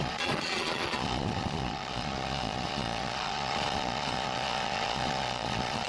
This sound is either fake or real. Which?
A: fake